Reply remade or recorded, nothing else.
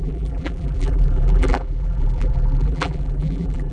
remade